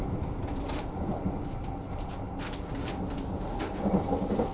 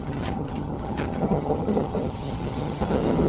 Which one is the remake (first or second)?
second